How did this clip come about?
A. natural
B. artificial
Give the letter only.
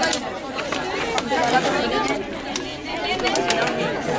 A